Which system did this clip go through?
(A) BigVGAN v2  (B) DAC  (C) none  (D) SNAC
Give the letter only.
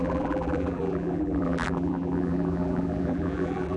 A